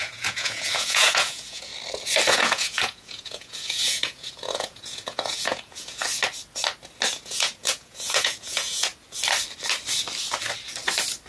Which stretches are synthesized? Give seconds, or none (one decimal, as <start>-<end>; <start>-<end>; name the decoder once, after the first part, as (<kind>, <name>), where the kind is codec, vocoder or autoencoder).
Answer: 0.0-1.7 (vocoder, Vocos); 2.3-6.0; 7.1-8.9